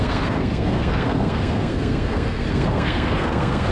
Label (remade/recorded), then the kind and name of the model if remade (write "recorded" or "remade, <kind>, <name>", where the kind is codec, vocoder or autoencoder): remade, codec, SNAC